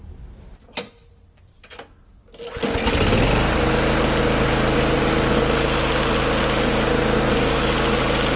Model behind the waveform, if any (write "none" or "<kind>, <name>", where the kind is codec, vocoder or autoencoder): none